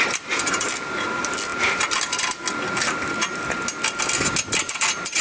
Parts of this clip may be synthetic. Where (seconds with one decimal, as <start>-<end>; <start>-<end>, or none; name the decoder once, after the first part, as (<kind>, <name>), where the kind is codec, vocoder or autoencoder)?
none